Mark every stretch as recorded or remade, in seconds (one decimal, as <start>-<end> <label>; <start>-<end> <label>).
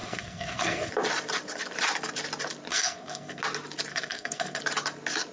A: 0.0-0.9 remade; 0.9-2.7 recorded; 2.7-3.4 remade; 3.4-3.9 recorded; 3.9-4.6 remade; 4.6-5.3 recorded